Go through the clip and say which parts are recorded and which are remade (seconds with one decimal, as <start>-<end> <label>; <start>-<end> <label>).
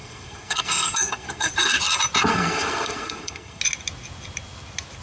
0.0-1.5 remade; 1.5-2.3 recorded; 2.3-3.6 remade; 3.6-5.0 recorded